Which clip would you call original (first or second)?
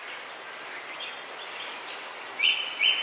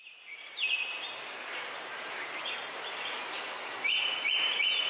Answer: first